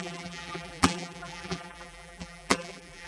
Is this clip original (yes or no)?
no